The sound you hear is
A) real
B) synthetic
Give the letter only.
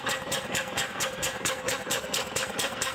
B